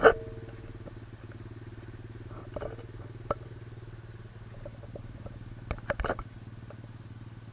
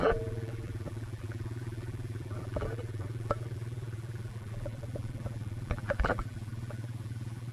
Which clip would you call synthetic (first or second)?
second